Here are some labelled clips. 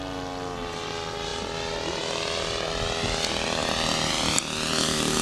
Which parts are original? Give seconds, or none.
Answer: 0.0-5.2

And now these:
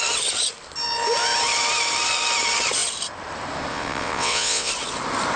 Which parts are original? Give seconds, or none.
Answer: 0.0-3.7; 4.7-5.4

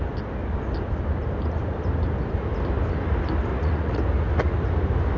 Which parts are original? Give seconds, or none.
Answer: 0.0-3.5; 4.0-5.2

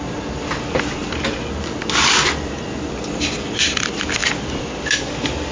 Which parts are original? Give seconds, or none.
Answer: 0.0-5.5

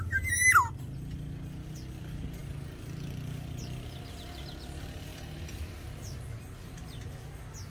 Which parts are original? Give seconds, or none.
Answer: 0.0-2.4; 4.4-5.1; 6.4-7.7

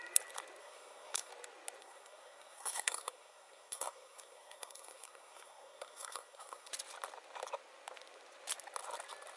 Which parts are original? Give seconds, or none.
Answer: 0.0-0.6; 1.3-1.8; 6.7-9.4

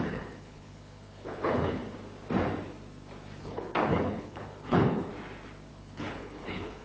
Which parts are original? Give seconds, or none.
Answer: 1.8-3.4; 5.1-5.7